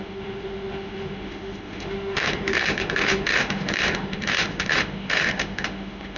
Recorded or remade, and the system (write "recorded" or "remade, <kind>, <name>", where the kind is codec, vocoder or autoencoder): remade, autoencoder, DAC-VAE